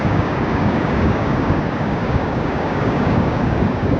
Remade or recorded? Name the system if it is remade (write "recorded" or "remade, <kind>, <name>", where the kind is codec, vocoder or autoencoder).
remade, codec, DAC